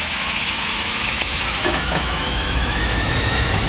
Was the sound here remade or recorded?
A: remade